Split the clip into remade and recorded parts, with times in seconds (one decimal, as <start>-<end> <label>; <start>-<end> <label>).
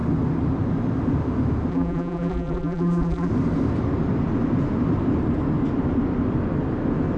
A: 0.0-1.7 recorded; 1.7-3.3 remade; 3.3-7.2 recorded